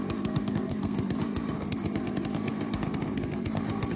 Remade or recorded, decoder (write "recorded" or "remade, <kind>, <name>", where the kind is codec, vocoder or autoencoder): remade, codec, SNAC